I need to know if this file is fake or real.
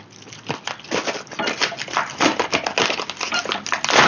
real